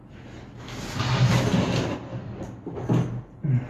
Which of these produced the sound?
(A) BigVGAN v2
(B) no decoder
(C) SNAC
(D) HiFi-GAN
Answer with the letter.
B